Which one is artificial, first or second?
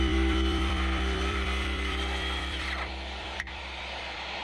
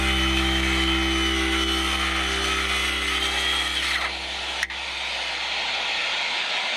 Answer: first